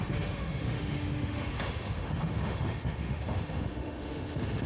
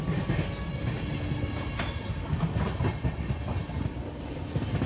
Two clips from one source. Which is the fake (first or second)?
first